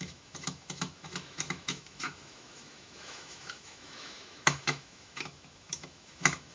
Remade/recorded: remade